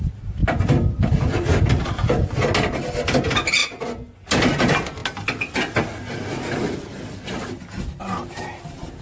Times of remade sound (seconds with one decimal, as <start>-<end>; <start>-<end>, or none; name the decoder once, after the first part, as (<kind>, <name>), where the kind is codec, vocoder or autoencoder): none